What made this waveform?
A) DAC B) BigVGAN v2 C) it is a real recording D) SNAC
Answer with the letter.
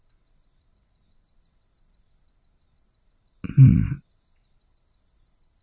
C